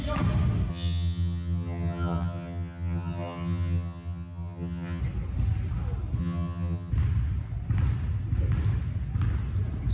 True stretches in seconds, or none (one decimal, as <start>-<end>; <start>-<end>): 0.0-0.7; 5.0-6.2; 6.9-9.9